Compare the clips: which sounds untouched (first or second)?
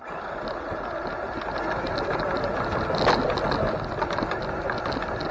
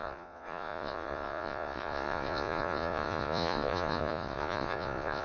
first